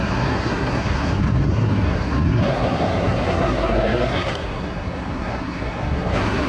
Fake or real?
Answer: fake